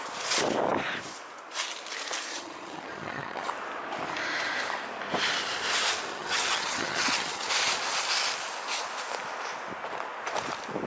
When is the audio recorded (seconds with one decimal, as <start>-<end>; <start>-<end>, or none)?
0.0-2.3; 3.5-6.1; 7.5-10.9